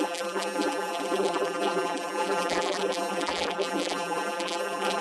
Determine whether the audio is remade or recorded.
remade